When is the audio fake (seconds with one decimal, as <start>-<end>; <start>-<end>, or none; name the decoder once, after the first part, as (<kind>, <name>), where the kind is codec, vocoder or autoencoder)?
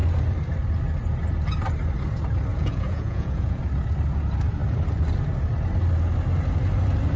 2.5-3.6 (vocoder, Vocos)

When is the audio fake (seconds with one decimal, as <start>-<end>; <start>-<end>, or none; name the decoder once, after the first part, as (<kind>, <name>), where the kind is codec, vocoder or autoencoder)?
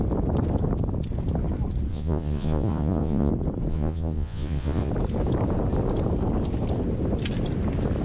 1.9-3.3 (vocoder, Vocos); 3.7-4.9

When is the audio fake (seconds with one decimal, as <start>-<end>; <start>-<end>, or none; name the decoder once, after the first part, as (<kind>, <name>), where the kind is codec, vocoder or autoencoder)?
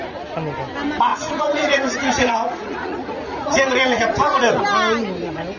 1.1-4.5 (vocoder, Vocos)